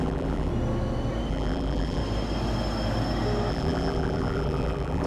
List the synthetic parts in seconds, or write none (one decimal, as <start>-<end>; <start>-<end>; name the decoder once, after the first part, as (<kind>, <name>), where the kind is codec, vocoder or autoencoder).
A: 0.0-0.5 (vocoder, BigVGAN v2); 1.3-2.0; 3.5-5.1

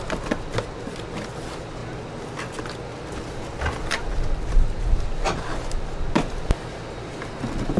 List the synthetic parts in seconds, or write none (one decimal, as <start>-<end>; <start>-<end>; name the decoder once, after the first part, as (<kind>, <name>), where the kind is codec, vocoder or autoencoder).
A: none

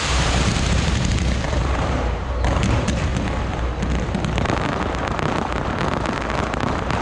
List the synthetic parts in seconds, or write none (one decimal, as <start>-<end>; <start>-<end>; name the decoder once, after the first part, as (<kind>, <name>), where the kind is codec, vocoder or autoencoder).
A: 0.0-3.1 (vocoder, BigVGAN v2); 6.5-7.0